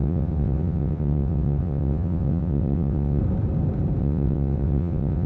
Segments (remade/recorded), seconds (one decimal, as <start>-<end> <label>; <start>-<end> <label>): 0.0-3.2 remade; 3.2-4.0 recorded; 4.0-5.3 remade